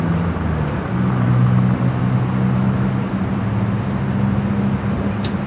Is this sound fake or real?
real